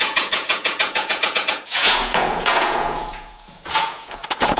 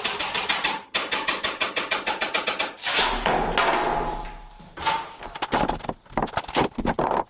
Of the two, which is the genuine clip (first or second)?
second